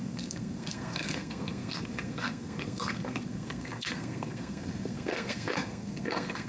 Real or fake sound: fake